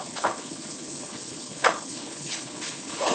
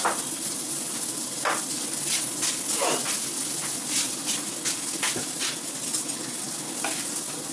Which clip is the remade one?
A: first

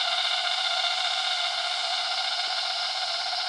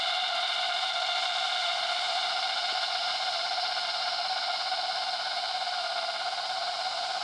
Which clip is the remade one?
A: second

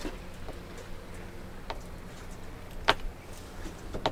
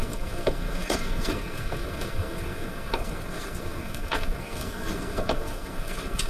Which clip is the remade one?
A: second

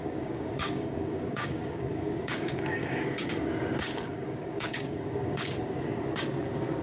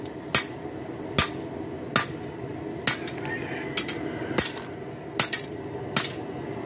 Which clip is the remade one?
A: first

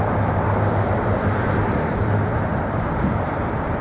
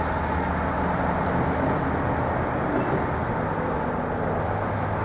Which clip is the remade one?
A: first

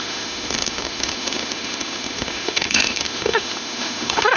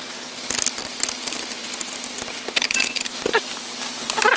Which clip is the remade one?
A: first